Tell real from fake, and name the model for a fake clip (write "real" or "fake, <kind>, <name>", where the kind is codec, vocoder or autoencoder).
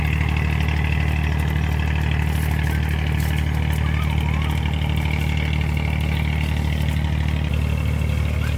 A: real